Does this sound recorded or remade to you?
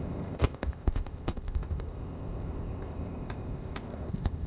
remade